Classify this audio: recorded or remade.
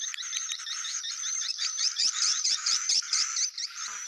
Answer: remade